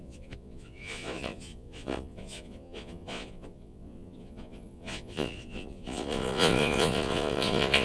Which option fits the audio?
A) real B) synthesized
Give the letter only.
B